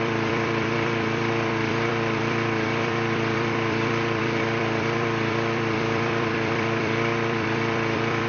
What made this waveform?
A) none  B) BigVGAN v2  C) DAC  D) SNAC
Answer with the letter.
B